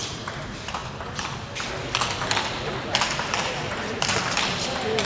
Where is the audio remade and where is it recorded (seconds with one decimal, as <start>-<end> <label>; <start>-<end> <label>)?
0.0-0.8 remade; 0.8-3.4 recorded; 3.4-5.0 remade